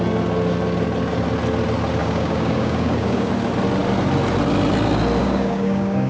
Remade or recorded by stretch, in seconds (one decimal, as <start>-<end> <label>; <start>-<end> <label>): 0.0-2.0 recorded; 2.0-3.3 remade; 3.3-5.2 recorded; 5.2-6.1 remade